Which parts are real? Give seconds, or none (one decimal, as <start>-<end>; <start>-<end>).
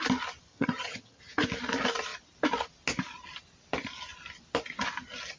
0.0-0.5; 1.2-5.4